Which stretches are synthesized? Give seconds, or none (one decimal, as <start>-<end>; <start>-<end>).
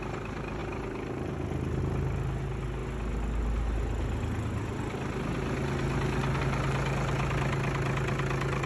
none